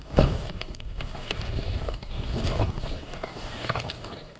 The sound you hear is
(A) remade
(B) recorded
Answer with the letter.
A